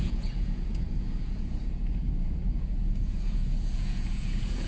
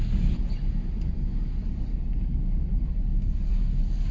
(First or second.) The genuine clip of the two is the second